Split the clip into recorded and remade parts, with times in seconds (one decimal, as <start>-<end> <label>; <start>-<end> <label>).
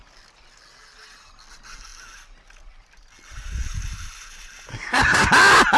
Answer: 0.0-4.7 recorded; 4.7-5.3 remade; 5.3-5.8 recorded